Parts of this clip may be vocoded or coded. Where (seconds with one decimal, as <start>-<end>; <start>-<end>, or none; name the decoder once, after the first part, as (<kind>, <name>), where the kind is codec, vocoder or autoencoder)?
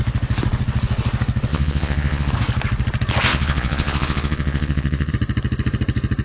1.5-2.3 (vocoder, Vocos); 3.3-5.1